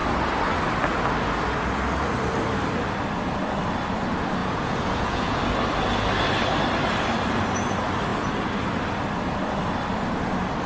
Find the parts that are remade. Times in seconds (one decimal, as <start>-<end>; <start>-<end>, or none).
4.4-5.4